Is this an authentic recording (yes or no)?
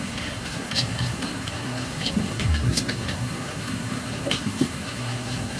no